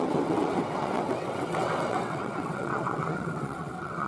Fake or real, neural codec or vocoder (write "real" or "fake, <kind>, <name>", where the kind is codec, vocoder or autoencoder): fake, vocoder, WaveNeXt